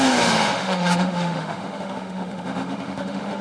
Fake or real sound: fake